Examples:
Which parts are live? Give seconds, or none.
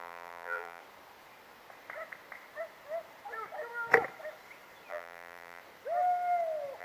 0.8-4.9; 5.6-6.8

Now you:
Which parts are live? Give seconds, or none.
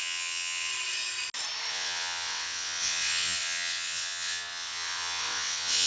0.7-1.7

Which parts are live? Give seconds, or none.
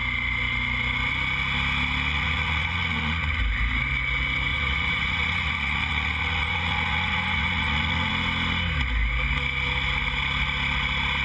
0.0-2.1; 3.4-4.5; 8.1-11.2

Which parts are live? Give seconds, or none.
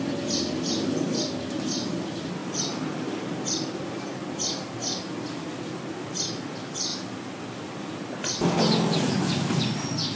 0.0-2.4; 3.2-10.2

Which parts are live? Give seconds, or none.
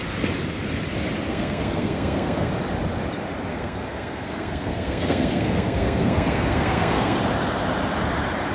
0.0-1.3; 2.5-3.5; 7.2-8.5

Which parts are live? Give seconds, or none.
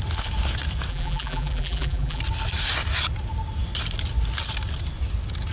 0.0-0.9; 2.2-5.5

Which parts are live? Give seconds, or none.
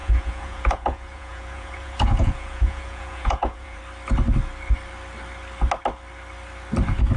3.8-7.2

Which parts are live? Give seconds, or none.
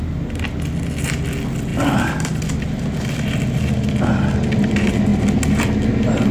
0.0-6.3